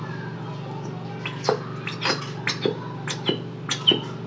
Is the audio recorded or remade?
recorded